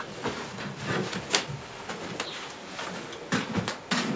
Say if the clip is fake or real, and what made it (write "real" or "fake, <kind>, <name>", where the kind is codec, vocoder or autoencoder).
real